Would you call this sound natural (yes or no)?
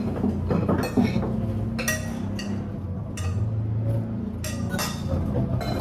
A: yes